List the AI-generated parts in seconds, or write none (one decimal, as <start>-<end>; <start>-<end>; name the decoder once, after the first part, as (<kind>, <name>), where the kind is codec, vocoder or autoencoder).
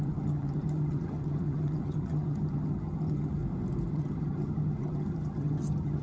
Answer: 0.0-3.4 (vocoder, HiFi-GAN); 3.9-6.0